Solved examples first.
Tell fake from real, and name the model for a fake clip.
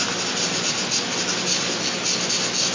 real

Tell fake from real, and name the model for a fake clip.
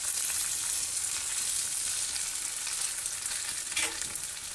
real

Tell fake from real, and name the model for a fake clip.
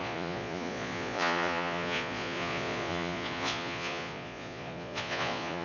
fake, vocoder, Vocos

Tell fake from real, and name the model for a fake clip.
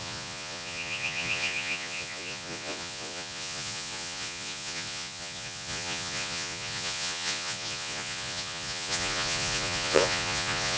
fake, vocoder, Vocos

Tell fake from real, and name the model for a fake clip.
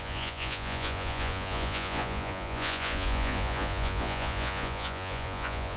fake, vocoder, Vocos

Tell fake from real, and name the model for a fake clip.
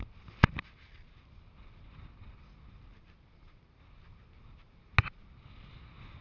real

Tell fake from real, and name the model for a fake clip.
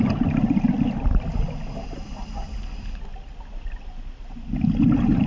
real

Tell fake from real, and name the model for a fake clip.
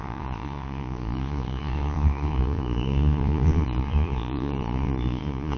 fake, vocoder, Vocos